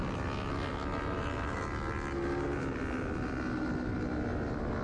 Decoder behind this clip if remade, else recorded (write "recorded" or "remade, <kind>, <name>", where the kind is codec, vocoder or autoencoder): recorded